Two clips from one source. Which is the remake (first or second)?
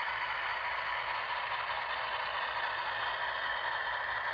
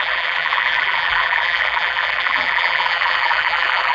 second